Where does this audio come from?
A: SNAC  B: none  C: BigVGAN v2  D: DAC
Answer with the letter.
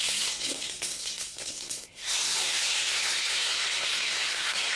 A